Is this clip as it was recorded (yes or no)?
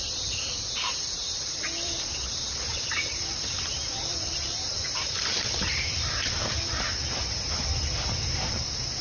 no